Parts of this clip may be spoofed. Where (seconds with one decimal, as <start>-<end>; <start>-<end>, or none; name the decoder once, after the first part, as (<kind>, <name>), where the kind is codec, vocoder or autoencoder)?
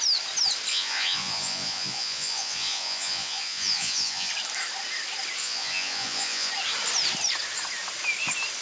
0.7-4.3 (vocoder, Vocos); 5.4-6.5